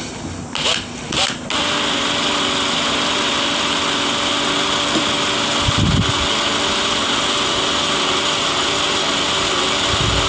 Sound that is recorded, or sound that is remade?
recorded